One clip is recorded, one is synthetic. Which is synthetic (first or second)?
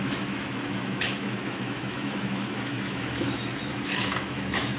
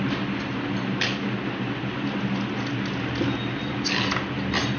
first